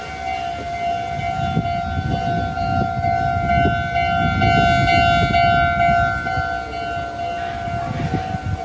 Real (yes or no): yes